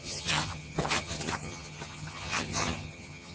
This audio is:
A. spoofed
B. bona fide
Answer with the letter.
A